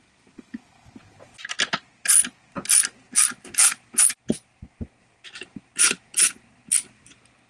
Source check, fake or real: real